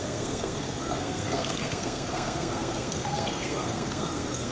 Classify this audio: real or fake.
fake